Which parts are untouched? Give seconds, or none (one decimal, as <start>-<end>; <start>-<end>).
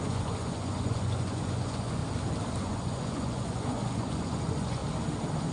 2.0-2.6; 4.8-5.5